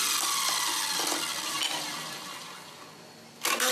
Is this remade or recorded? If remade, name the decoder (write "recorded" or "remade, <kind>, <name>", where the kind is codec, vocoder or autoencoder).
recorded